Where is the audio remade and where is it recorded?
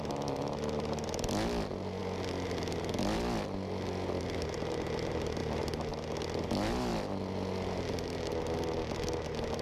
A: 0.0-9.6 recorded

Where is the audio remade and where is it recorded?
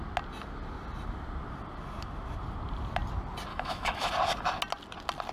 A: 0.0-3.5 recorded; 3.5-4.1 remade; 4.1-5.3 recorded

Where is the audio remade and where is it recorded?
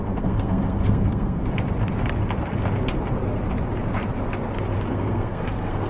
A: 0.0-1.4 remade; 1.4-4.9 recorded; 4.9-5.9 remade